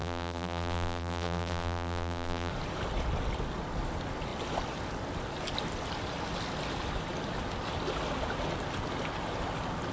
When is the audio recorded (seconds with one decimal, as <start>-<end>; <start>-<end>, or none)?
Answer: 2.5-9.9